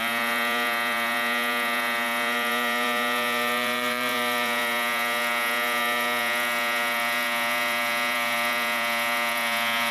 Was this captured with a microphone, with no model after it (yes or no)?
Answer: no